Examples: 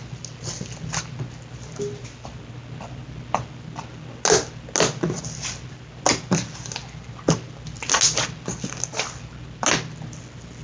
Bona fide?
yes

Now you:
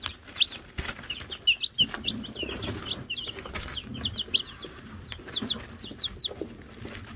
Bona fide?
yes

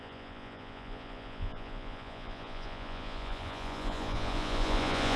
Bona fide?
no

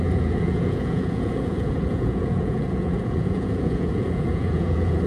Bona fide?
no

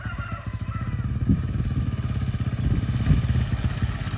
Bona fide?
yes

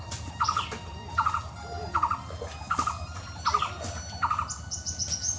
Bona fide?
yes